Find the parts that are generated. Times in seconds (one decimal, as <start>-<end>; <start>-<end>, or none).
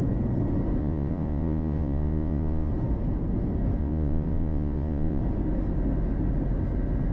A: 0.8-2.7; 3.8-5.2